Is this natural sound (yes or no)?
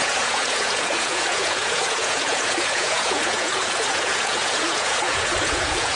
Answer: no